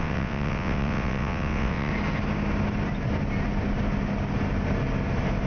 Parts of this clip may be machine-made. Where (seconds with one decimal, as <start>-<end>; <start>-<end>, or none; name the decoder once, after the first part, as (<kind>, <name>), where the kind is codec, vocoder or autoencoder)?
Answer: 0.0-1.9 (vocoder, WaveNeXt)

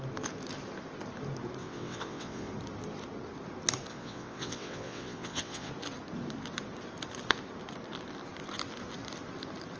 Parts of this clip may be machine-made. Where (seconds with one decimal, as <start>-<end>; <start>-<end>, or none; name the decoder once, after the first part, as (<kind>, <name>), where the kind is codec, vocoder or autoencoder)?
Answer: 1.6-2.5 (vocoder, WaveNeXt); 3.9-5.7

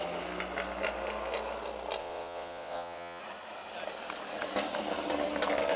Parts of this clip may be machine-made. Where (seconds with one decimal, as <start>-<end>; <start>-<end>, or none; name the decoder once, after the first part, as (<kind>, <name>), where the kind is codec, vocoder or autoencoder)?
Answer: 2.0-3.2 (vocoder, WaveNeXt)

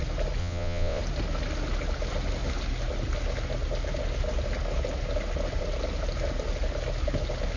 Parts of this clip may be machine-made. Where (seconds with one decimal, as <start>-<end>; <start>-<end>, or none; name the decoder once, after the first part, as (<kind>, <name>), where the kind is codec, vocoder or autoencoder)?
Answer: 0.4-1.0 (vocoder, WaveNeXt)

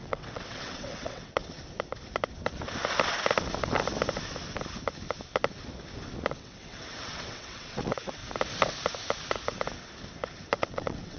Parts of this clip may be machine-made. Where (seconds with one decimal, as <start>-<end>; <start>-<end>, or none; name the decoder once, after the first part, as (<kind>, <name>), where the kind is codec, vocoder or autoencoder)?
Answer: 0.0-1.4 (vocoder, WaveNeXt); 6.3-8.2; 10.6-11.2

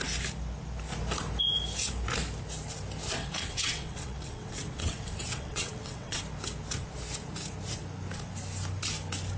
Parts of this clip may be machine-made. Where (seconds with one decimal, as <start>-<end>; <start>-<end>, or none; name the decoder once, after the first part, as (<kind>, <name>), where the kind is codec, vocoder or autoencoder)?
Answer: 3.2-6.2 (vocoder, WaveNeXt)

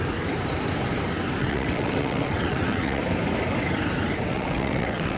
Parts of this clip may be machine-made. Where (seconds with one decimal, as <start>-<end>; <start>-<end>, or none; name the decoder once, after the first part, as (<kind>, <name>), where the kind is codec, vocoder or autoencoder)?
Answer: 1.4-3.0 (vocoder, WaveNeXt); 4.3-5.2

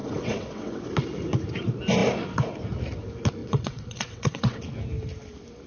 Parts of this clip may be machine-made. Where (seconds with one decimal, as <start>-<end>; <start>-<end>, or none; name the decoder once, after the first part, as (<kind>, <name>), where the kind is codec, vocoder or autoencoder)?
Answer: 0.0-0.8 (vocoder, WaveNeXt); 3.4-4.6